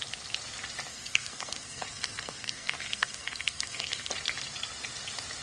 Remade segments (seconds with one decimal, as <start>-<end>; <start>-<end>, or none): 0.9-4.1